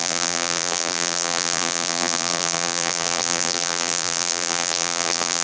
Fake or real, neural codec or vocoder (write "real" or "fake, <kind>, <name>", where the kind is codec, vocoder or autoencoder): fake, vocoder, BigVGAN v2